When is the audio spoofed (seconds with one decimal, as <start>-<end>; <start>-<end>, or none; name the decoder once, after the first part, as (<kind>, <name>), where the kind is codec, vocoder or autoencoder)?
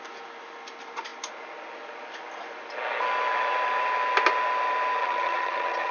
5.0-5.9 (vocoder, HiFi-GAN)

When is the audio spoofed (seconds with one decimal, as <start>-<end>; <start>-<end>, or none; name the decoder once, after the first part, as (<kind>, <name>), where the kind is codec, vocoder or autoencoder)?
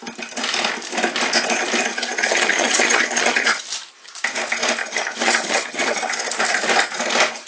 1.9-3.6 (vocoder, HiFi-GAN); 4.8-6.1